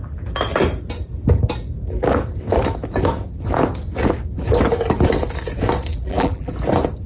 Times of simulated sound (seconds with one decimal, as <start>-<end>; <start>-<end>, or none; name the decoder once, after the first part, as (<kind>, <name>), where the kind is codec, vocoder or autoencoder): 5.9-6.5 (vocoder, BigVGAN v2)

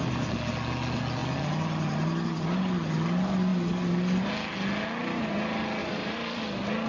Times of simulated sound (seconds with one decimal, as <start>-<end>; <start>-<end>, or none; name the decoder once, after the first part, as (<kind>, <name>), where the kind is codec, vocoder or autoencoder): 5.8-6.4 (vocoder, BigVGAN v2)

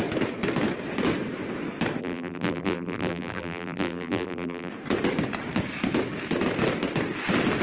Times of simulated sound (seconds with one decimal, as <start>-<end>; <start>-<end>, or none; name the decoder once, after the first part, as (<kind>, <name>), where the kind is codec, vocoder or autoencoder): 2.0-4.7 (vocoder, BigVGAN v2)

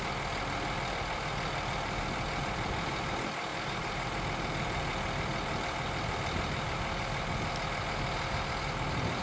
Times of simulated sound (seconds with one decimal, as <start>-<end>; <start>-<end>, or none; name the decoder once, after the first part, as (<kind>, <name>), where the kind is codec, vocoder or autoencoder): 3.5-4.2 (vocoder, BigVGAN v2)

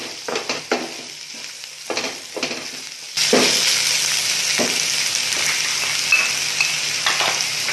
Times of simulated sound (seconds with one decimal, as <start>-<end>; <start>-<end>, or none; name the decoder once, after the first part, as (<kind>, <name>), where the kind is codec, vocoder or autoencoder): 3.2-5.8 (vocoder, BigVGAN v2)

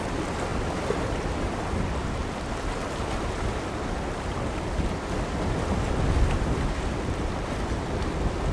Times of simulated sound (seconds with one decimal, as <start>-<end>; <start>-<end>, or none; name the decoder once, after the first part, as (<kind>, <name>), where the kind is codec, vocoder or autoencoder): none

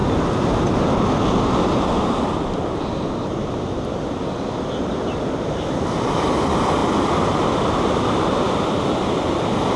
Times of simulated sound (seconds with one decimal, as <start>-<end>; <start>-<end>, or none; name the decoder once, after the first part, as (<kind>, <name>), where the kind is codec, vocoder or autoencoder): none